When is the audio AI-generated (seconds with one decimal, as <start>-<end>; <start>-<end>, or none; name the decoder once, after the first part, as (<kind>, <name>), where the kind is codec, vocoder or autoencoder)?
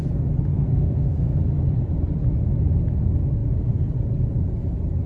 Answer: 0.5-1.4 (codec, SNAC)